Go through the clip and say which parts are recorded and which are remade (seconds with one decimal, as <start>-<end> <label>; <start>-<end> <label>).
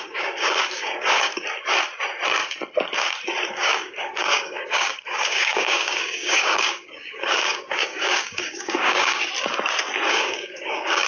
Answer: 0.0-1.3 remade; 1.3-3.5 recorded; 3.5-9.3 remade; 9.3-10.1 recorded; 10.1-11.1 remade